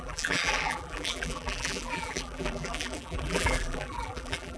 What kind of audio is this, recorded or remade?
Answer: remade